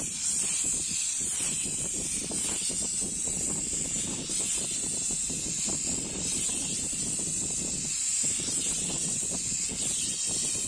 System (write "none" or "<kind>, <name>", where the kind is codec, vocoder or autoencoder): none